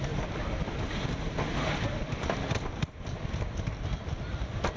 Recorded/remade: remade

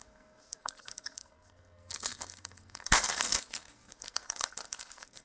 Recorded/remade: remade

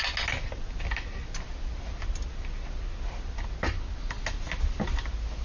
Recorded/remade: recorded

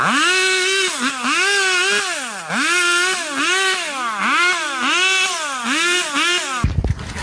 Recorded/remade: recorded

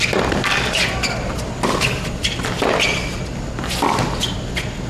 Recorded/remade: recorded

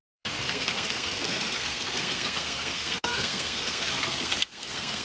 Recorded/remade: remade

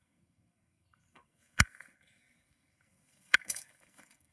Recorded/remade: remade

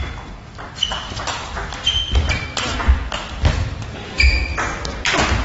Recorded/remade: recorded